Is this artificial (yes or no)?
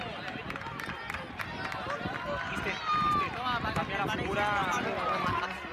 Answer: no